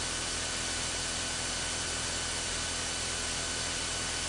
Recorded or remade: recorded